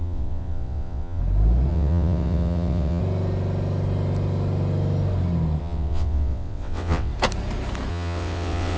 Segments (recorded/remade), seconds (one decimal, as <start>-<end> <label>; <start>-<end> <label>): 0.0-1.2 remade; 1.2-1.7 recorded; 1.7-3.0 remade; 3.0-5.6 recorded; 5.6-7.1 remade; 7.1-7.9 recorded; 7.9-8.8 remade